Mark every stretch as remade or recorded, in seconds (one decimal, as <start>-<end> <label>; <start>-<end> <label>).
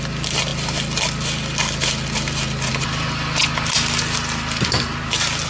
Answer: 0.0-5.5 recorded